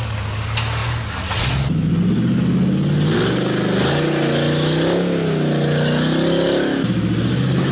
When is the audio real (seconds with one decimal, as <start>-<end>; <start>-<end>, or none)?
0.0-7.7